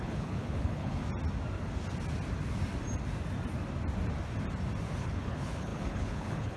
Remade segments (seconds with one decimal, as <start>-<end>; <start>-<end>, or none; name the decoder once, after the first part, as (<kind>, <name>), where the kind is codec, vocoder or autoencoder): 0.0-1.0 (codec, HILCodec); 5.0-6.6